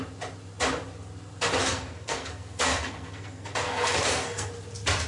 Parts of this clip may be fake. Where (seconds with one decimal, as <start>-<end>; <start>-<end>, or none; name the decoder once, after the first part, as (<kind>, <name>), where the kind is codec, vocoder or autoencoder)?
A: 1.6-4.5 (codec, SNAC)